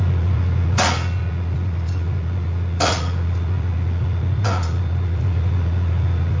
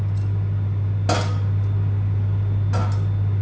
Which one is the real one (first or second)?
second